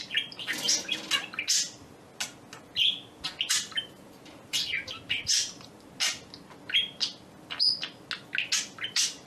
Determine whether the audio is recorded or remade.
recorded